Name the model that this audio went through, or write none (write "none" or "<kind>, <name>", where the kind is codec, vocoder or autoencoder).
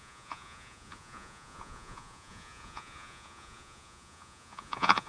vocoder, Vocos